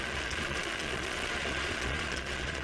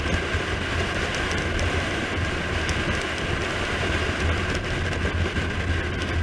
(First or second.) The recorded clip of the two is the second